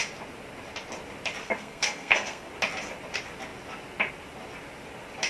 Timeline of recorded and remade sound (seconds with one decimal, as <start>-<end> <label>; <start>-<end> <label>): 0.0-1.4 recorded; 1.4-2.5 remade; 2.5-5.3 recorded